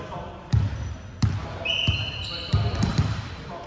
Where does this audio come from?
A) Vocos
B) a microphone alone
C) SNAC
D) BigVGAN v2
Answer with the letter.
B